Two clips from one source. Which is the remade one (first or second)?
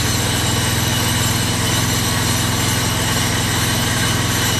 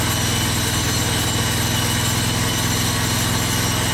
first